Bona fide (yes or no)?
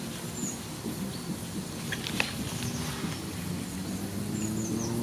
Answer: yes